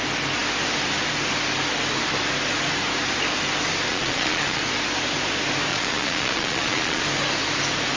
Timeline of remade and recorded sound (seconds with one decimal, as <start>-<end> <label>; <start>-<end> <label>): 0.0-3.9 recorded; 3.9-4.6 remade; 4.6-5.7 recorded; 5.7-7.0 remade; 7.0-8.0 recorded